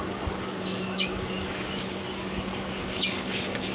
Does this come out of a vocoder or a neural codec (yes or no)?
yes